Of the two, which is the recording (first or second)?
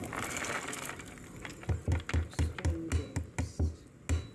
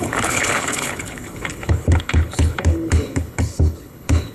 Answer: first